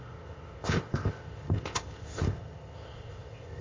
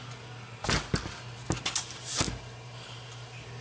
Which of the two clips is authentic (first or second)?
second